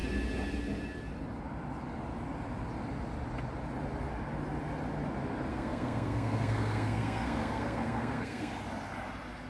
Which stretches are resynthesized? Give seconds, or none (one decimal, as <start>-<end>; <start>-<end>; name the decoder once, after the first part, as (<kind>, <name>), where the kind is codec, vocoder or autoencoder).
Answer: 5.5-8.5 (codec, SNAC)